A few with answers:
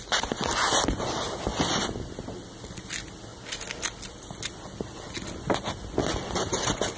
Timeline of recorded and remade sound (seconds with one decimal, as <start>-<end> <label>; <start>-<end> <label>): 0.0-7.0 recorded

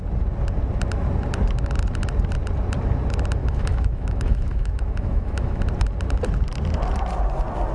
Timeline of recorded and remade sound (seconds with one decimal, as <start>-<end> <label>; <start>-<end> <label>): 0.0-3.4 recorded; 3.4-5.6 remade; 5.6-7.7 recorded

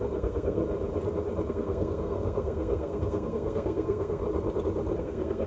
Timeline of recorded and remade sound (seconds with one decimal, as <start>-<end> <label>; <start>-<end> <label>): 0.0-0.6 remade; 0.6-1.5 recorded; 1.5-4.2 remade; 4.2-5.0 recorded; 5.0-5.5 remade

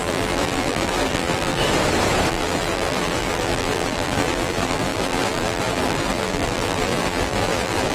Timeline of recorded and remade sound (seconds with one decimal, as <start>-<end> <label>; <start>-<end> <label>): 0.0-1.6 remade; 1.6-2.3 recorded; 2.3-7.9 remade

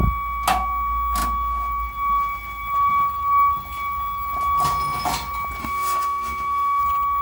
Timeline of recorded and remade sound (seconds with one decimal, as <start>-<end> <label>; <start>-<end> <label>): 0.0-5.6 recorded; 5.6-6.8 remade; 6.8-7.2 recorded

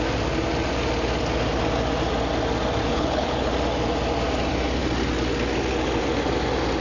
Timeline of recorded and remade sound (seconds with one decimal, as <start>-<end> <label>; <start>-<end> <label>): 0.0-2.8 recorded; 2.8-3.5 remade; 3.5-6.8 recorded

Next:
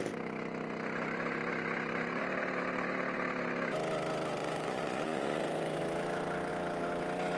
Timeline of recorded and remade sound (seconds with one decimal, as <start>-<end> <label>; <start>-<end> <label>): 0.0-4.4 recorded; 4.4-5.8 remade; 5.8-7.4 recorded